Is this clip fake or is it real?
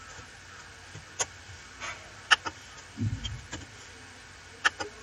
real